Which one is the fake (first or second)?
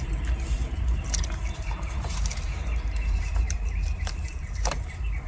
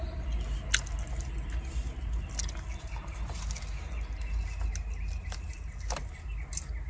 first